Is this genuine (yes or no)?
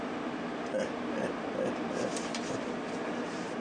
no